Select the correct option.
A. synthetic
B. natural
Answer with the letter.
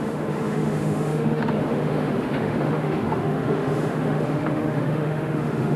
A